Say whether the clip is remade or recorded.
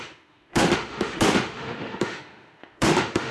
remade